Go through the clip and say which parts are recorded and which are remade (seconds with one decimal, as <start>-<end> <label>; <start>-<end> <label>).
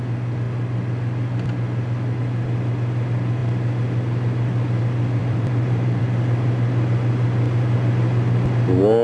0.0-5.2 recorded; 5.2-6.0 remade; 6.0-9.0 recorded